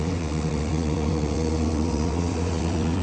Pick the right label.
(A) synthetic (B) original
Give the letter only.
A